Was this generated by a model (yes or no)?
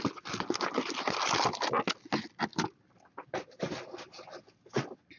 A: no